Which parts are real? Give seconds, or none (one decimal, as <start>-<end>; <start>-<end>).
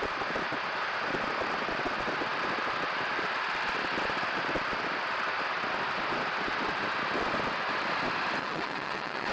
0.0-8.4